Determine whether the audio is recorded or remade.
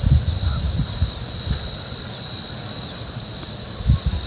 recorded